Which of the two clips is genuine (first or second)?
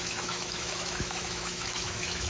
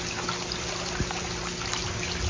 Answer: second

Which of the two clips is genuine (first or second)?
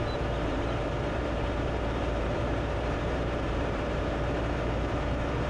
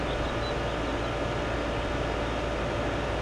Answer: second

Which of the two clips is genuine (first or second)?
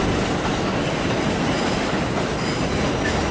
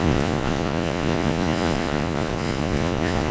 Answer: first